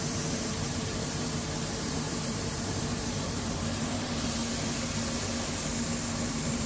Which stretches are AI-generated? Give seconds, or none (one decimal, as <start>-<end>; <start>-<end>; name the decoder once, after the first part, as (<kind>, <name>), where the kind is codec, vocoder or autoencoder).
0.0-4.4 (vocoder, BigVGAN v2); 6.3-6.7